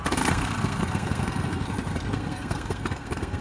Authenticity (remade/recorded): remade